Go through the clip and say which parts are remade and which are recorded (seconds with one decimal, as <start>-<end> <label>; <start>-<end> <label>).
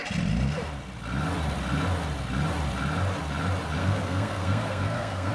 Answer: 0.0-3.8 recorded; 3.8-5.3 remade